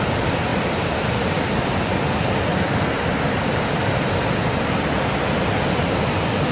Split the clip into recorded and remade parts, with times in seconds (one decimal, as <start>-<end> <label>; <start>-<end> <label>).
0.0-0.5 recorded; 0.5-2.0 remade; 2.0-6.5 recorded